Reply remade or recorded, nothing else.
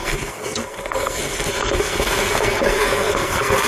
remade